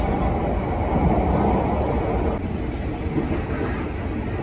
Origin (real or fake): real